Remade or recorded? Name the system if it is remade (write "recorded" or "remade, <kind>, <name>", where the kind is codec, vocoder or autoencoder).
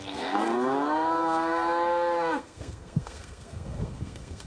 remade, codec, SNAC